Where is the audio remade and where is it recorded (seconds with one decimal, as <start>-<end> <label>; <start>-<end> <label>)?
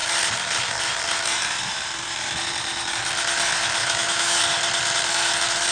0.0-3.8 recorded; 3.8-4.4 remade; 4.4-5.7 recorded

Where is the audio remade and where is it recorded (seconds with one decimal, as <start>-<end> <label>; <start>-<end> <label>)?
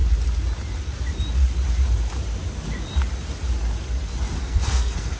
0.0-4.4 recorded; 4.4-5.2 remade